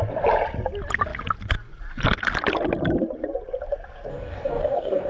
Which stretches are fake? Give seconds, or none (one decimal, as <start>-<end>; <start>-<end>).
4.1-5.1

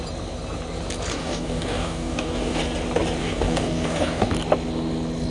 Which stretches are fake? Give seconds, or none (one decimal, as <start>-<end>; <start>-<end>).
1.1-2.6; 3.2-4.3

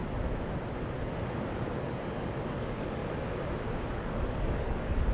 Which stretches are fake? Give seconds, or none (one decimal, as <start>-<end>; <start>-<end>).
1.8-3.0; 3.9-5.1

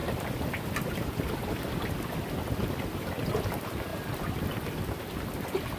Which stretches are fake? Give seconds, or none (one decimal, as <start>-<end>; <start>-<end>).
none

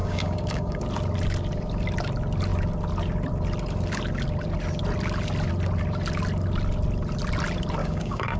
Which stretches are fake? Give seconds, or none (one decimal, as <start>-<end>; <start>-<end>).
0.0-0.8; 7.8-8.4